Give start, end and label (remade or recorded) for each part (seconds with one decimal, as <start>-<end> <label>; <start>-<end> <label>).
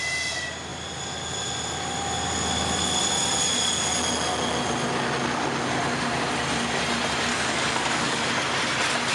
0.0-7.3 recorded; 7.3-8.3 remade; 8.3-9.1 recorded